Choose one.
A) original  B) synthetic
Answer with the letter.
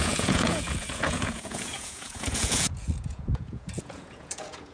B